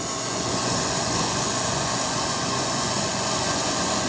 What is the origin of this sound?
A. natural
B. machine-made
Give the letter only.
B